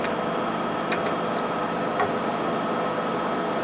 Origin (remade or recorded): recorded